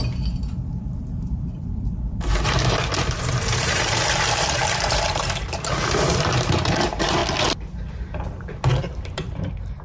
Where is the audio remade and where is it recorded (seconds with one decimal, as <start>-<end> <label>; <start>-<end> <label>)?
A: 0.0-7.2 remade; 7.2-8.7 recorded; 8.7-9.8 remade